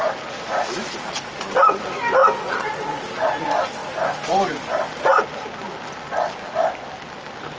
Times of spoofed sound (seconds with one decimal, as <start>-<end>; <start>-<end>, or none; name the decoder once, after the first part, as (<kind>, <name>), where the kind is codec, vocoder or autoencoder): 3.8-4.5 (vocoder, BigVGAN v2)